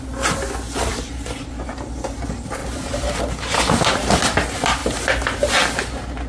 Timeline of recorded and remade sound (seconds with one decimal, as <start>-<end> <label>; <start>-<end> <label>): 0.0-0.9 recorded; 0.9-1.6 remade; 1.6-2.6 recorded; 2.6-3.2 remade; 3.2-6.3 recorded